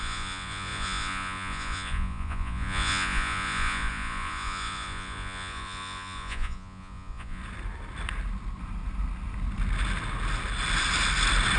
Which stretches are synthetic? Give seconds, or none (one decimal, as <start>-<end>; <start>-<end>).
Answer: 0.0-7.4